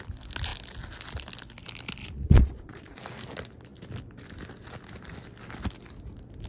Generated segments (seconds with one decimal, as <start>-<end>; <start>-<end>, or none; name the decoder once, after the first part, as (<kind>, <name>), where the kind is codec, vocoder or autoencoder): 2.0-3.0 (vocoder, Vocos)

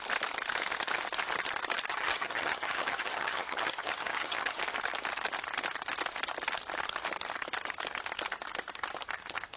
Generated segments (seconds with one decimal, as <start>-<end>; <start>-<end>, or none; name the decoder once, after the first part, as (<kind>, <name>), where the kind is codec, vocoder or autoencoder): 1.9-4.6 (vocoder, HiFi-GAN)

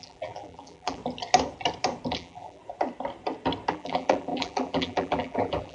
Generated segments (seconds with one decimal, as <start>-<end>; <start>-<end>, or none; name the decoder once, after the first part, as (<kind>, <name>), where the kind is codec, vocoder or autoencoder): 0.0-1.0 (vocoder, BigVGAN v2); 2.1-2.6; 3.7-5.7

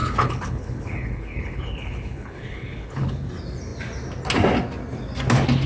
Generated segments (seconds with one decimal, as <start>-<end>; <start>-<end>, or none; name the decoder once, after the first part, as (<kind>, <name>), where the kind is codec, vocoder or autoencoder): 0.0-3.3 (codec, HILCodec)